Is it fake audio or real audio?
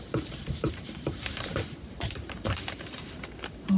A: fake